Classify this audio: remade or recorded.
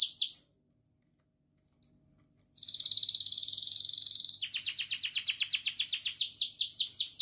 recorded